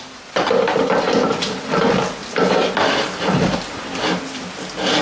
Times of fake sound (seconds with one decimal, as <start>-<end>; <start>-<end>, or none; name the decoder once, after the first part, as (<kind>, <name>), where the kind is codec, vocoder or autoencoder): none